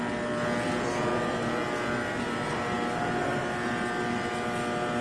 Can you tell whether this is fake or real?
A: real